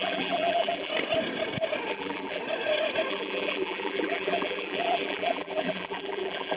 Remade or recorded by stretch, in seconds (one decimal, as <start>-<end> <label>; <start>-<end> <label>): 0.0-0.9 remade; 0.9-1.9 recorded; 1.9-2.4 remade; 2.4-3.1 recorded; 3.1-6.6 remade